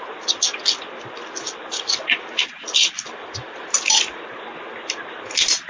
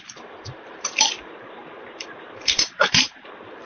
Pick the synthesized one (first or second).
second